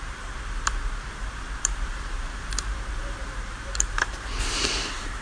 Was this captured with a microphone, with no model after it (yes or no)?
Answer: no